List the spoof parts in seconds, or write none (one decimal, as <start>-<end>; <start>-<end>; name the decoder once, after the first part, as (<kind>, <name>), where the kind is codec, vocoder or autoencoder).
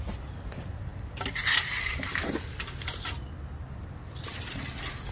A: none